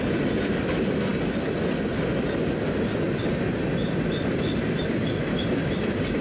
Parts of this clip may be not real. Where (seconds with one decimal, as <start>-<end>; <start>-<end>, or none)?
none